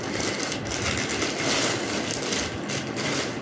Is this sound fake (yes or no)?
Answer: no